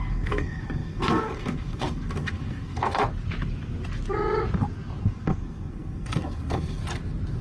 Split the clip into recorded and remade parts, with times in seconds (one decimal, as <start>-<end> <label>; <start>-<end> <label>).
0.0-3.0 remade; 3.0-5.0 recorded; 5.0-6.8 remade; 6.8-7.4 recorded